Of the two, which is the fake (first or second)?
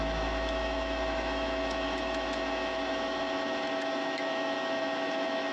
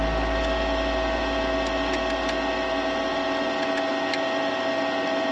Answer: first